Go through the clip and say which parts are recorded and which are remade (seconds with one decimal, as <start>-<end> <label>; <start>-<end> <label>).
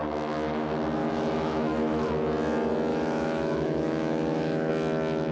0.0-1.0 recorded; 1.0-2.1 remade; 2.1-2.9 recorded; 2.9-4.7 remade; 4.7-5.3 recorded